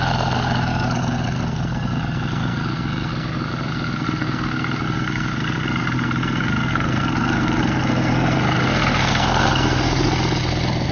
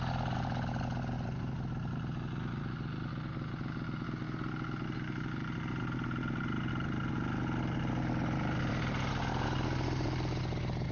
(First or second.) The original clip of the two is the second